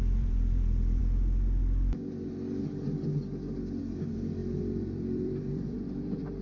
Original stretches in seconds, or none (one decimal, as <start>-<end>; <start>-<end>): 1.0-3.8